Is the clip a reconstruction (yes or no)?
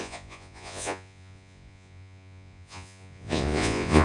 yes